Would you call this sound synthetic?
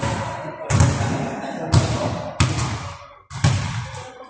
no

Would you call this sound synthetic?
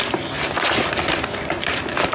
no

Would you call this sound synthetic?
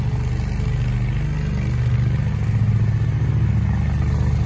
no